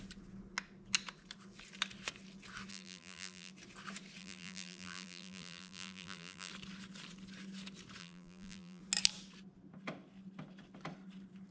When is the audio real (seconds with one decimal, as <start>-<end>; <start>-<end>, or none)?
0.0-2.7; 3.5-4.2; 6.5-8.0; 8.8-11.5